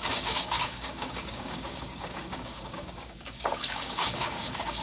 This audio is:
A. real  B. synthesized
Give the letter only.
B